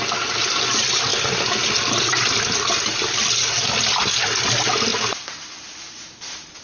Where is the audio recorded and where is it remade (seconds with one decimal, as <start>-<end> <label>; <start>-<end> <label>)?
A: 0.0-6.6 recorded